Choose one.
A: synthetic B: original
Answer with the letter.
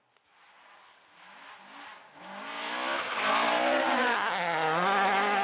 B